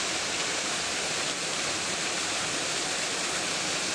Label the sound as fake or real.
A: real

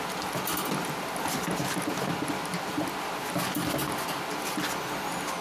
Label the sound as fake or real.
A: real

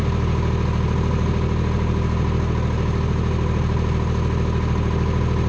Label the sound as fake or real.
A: real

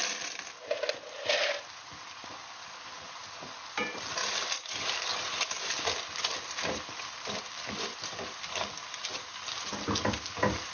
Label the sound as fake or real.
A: real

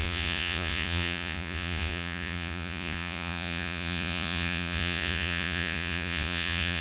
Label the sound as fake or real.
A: fake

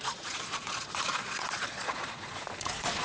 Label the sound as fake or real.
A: fake